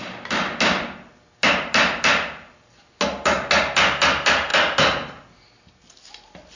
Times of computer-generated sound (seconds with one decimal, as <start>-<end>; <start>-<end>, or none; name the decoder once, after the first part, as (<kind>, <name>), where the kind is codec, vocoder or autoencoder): none